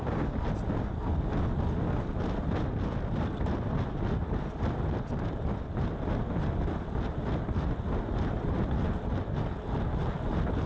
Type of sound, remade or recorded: recorded